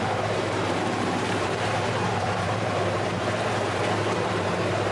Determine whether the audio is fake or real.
fake